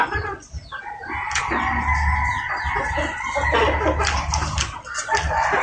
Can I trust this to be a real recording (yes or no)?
yes